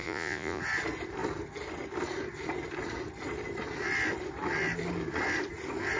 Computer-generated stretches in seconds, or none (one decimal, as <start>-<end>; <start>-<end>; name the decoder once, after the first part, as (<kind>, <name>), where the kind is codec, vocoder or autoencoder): 0.0-0.6 (vocoder, Vocos)